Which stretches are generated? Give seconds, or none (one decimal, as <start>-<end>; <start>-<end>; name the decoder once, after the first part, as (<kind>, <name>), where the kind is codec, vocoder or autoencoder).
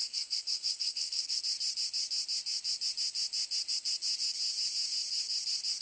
0.0-1.4 (codec, SNAC)